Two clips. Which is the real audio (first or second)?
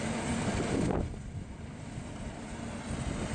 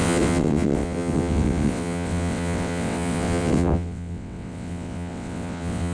first